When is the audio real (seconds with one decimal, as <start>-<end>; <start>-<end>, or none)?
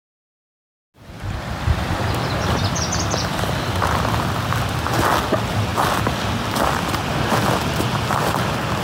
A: 0.0-8.8